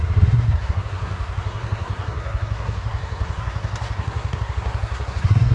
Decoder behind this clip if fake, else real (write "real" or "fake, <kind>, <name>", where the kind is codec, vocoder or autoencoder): fake, codec, SNAC